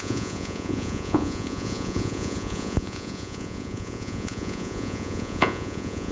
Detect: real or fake fake